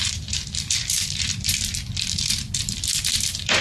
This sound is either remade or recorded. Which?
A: remade